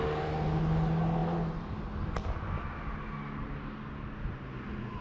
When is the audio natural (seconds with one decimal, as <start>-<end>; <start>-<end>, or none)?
0.0-5.0